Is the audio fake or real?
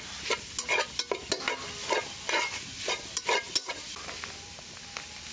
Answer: real